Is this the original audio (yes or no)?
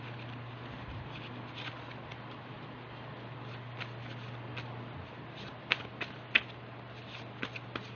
yes